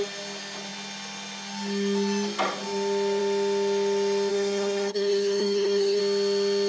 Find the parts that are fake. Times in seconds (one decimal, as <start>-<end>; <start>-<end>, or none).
4.3-6.0